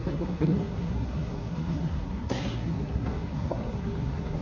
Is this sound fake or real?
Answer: fake